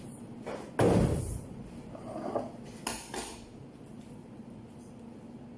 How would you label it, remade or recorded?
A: recorded